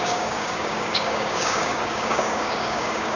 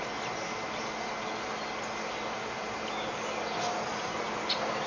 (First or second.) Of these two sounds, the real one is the second